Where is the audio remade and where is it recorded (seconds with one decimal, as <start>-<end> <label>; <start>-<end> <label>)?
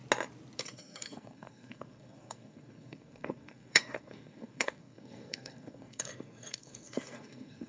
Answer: 0.0-0.6 recorded; 0.6-7.7 remade